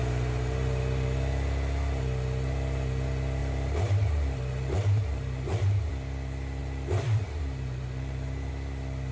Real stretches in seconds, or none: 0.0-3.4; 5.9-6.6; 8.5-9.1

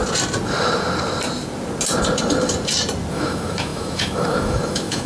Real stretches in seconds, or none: 0.0-3.1

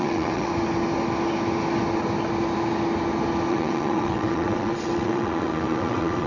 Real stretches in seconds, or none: 0.5-3.5

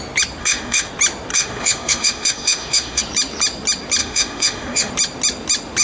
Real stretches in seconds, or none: 0.0-0.4; 0.9-1.3; 3.0-4.0; 4.9-5.8

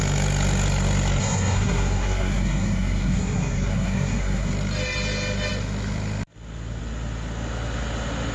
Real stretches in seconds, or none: 0.0-1.2; 4.5-8.3

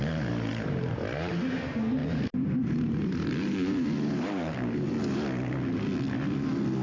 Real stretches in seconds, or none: 0.0-0.5; 1.3-2.0; 4.9-6.8

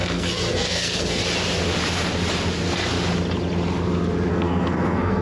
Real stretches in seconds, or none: 1.2-4.3